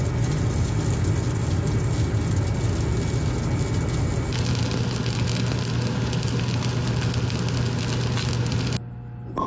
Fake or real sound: real